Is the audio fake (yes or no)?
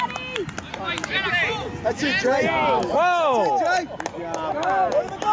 no